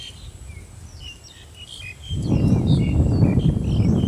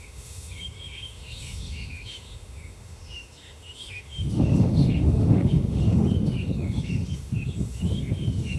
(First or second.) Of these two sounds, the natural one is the first